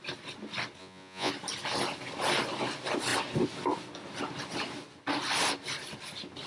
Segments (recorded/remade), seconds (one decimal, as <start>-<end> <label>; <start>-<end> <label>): 0.0-0.8 recorded; 0.8-1.3 remade; 1.3-6.5 recorded